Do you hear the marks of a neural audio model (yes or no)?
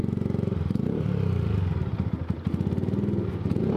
no